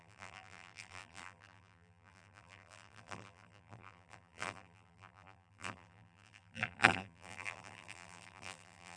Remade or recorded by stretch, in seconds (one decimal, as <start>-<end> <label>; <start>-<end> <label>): 0.0-9.0 remade